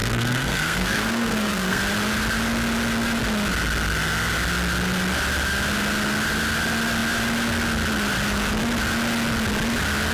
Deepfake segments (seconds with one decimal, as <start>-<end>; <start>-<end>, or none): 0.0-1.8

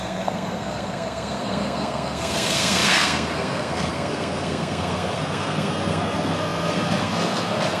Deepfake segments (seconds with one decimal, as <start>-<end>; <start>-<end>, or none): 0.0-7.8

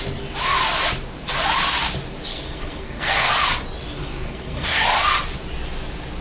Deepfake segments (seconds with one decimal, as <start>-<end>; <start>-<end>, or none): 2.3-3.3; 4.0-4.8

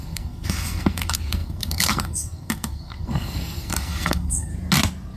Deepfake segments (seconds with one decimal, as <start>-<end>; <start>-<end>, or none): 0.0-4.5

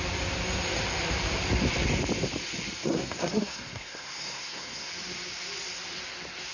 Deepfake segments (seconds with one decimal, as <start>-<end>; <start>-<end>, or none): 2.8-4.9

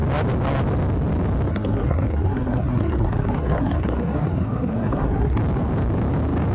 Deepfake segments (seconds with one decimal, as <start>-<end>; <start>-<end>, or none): 1.5-5.4